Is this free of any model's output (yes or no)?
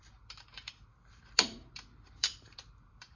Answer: no